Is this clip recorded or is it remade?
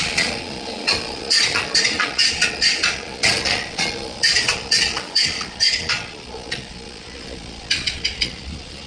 remade